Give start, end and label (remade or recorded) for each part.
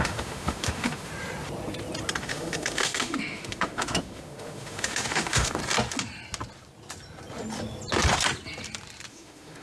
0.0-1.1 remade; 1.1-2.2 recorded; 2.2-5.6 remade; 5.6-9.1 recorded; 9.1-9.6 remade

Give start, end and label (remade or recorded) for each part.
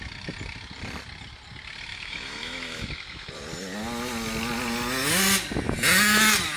0.0-1.9 recorded; 1.9-3.3 remade; 3.3-6.6 recorded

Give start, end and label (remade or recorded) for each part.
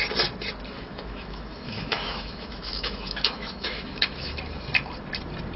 0.0-0.9 recorded; 0.9-4.3 remade; 4.3-5.6 recorded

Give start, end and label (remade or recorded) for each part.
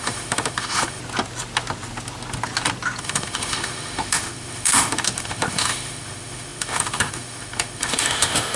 0.0-1.0 remade; 1.0-3.0 recorded; 3.0-8.6 remade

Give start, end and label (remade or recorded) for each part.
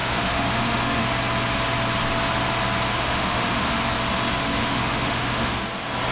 0.0-1.0 remade; 1.0-2.9 recorded; 2.9-3.7 remade; 3.7-4.6 recorded; 4.6-5.6 remade; 5.6-6.1 recorded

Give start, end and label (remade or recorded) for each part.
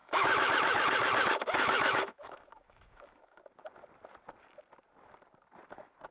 0.0-3.4 remade; 3.4-6.1 recorded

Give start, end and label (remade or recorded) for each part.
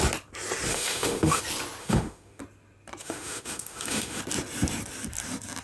0.0-0.7 recorded; 0.7-1.4 remade; 1.4-1.8 recorded; 1.8-2.4 remade; 2.4-3.0 recorded; 3.0-4.2 remade; 4.2-5.6 recorded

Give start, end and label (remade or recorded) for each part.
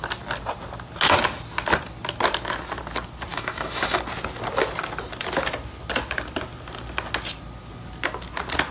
0.0-3.3 recorded; 3.3-4.0 remade; 4.0-8.7 recorded